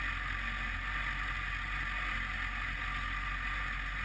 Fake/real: real